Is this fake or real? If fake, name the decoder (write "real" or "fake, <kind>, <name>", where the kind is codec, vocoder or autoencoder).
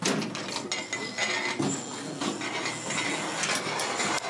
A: real